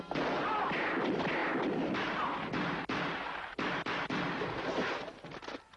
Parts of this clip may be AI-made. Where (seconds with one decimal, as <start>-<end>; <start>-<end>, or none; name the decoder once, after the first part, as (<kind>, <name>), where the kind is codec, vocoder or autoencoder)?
none